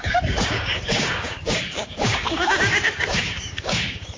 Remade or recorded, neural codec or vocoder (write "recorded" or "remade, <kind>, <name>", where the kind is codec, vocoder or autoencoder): remade, codec, DAC